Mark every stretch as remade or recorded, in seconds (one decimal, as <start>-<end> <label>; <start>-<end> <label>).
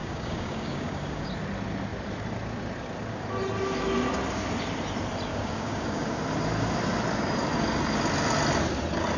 0.0-1.3 remade; 1.3-5.3 recorded; 5.3-6.2 remade; 6.2-9.2 recorded